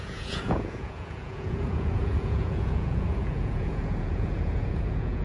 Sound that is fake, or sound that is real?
fake